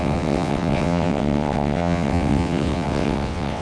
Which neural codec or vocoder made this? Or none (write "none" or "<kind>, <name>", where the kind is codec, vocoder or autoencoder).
vocoder, WaveNeXt